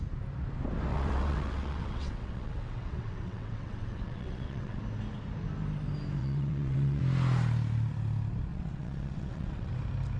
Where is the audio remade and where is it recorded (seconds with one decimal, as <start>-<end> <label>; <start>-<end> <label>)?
0.0-0.9 recorded; 0.9-4.8 remade; 4.8-6.2 recorded; 6.2-7.0 remade; 7.0-8.5 recorded; 8.5-9.7 remade; 9.7-10.2 recorded